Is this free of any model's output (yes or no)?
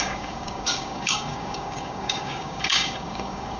no